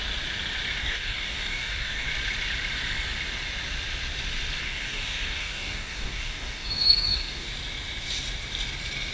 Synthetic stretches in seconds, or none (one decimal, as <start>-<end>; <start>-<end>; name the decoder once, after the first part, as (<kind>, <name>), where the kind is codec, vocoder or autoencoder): 0.8-2.1 (codec, DAC); 4.6-7.5